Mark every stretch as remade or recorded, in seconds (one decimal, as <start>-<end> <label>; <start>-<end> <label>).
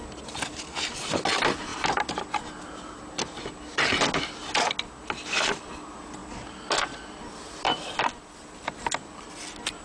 0.0-9.8 recorded